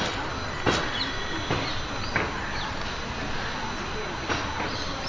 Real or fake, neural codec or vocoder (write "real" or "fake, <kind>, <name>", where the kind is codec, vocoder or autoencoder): real